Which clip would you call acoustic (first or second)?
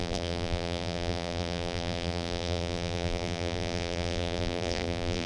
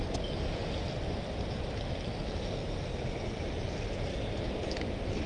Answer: second